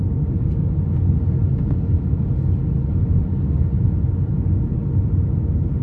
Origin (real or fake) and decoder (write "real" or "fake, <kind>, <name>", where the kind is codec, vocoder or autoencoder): real